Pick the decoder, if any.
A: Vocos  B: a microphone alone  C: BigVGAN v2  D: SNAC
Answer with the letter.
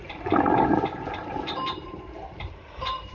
C